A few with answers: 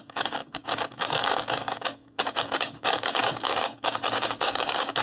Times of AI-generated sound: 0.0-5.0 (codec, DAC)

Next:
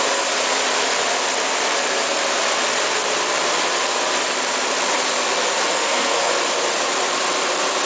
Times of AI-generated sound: 5.7-6.3 (codec, SNAC)

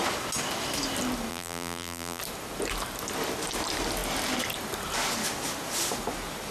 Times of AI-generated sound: 1.3-2.2 (vocoder, BigVGAN v2)

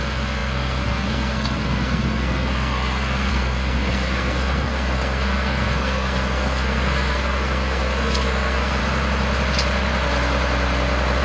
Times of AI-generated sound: 0.0-8.8 (codec, SNAC)

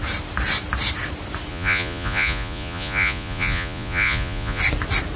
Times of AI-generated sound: 1.5-4.6 (vocoder, Vocos)

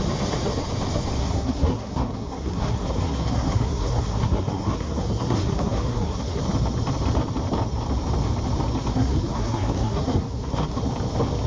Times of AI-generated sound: 1.2-6.4 (codec, SNAC); 8.9-10.8

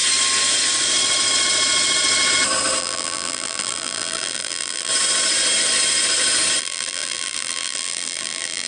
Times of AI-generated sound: 2.8-4.9 (vocoder, BigVGAN v2); 6.6-8.7

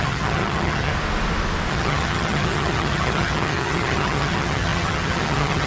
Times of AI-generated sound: 0.0-0.9 (vocoder, HiFi-GAN); 1.7-5.7